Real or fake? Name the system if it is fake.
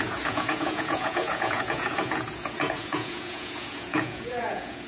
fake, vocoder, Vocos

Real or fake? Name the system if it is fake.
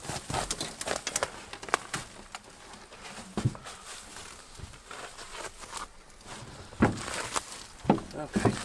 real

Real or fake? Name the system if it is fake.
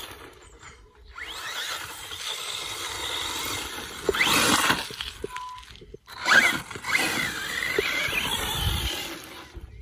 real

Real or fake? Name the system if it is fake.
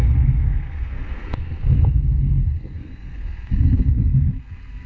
fake, codec, SNAC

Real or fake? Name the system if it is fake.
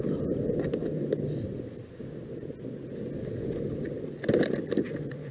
real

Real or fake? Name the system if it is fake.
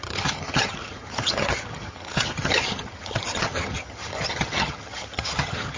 fake, vocoder, HiFi-GAN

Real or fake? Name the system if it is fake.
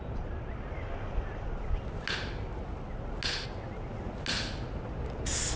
real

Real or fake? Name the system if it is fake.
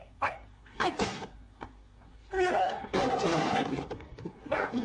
fake, codec, SNAC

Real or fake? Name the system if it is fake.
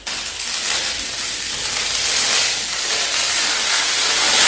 real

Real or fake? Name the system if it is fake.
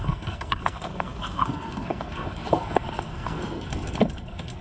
fake, codec, SNAC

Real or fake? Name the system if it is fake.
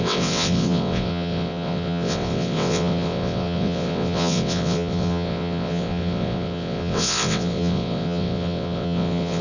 fake, vocoder, WaveNeXt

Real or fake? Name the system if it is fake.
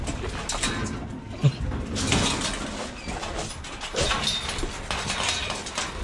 real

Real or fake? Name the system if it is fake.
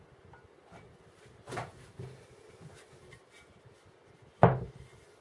real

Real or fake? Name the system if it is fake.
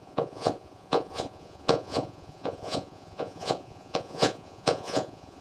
fake, vocoder, Vocos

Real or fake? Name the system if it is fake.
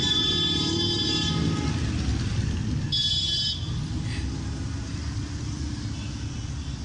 real